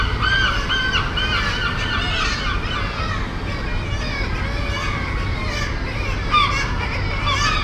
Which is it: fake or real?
real